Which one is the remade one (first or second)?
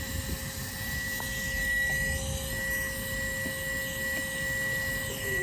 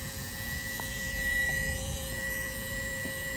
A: second